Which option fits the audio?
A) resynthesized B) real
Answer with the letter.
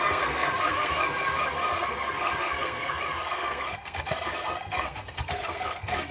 A